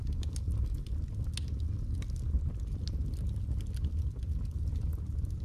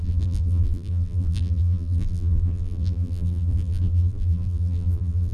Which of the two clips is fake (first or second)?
second